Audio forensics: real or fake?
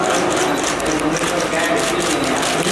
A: real